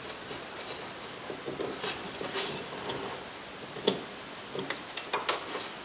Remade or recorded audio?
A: recorded